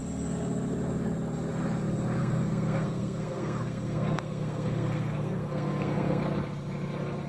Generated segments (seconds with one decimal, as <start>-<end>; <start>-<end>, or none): 2.2-6.2

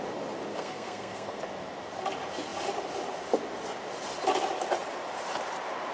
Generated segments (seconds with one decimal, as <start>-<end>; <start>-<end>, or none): 0.5-1.4

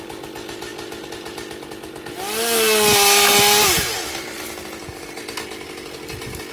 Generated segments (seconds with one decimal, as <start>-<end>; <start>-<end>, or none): none

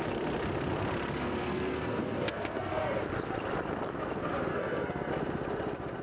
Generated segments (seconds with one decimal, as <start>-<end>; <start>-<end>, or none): 1.2-3.0; 4.5-5.1

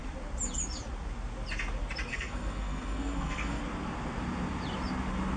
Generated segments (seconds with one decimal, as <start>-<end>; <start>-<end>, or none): 2.1-3.6